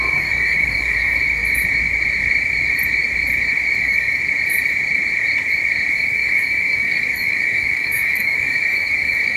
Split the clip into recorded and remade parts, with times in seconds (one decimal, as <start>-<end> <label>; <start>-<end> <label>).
0.0-1.4 remade; 1.4-3.8 recorded; 3.8-4.2 remade; 4.2-5.9 recorded; 5.9-9.4 remade